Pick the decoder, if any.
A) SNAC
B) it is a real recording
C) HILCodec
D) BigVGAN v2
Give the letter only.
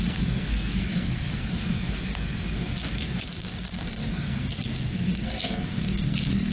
A